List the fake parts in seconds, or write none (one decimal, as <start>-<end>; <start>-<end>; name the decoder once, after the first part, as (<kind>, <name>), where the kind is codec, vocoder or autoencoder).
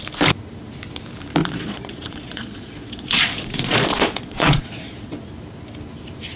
1.4-5.2 (vocoder, Vocos)